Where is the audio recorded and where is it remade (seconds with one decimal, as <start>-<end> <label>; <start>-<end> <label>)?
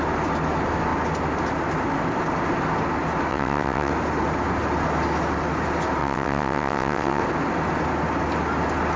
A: 0.0-3.3 recorded; 3.3-3.9 remade; 3.9-6.0 recorded; 6.0-7.2 remade; 7.2-9.0 recorded